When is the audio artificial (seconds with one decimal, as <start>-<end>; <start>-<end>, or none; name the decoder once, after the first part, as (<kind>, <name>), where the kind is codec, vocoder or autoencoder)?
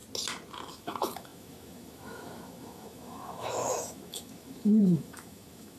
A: 0.7-5.8 (autoencoder, DAC-VAE)